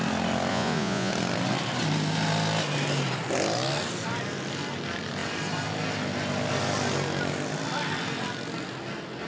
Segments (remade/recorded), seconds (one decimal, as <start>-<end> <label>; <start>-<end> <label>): 0.0-0.5 recorded; 0.5-1.1 remade; 1.1-9.3 recorded